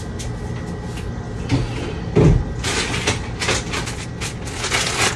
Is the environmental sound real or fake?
real